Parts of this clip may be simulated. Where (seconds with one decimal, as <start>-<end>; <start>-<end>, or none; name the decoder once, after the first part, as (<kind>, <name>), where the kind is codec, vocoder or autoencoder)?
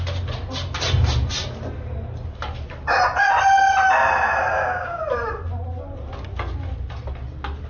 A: 4.5-5.0 (codec, DAC)